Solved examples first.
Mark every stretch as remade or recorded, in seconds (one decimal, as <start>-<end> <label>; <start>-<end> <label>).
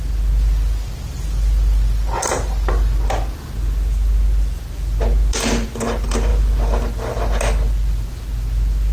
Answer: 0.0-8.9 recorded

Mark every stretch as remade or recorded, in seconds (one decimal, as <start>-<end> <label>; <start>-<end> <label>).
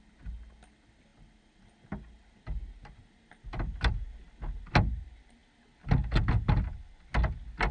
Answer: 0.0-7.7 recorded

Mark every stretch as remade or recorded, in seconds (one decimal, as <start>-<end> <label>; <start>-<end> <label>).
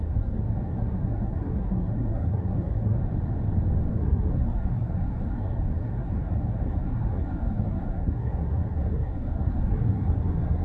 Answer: 0.0-3.0 remade; 3.0-3.9 recorded; 3.9-10.6 remade